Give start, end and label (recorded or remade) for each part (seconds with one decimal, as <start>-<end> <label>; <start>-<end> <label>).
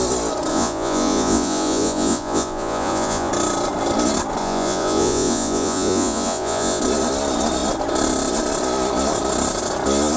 0.0-0.5 recorded; 0.5-3.3 remade; 3.3-4.4 recorded; 4.4-6.8 remade; 6.8-10.2 recorded